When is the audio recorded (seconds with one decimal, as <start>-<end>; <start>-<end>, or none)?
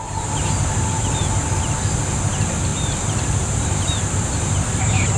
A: 1.2-2.3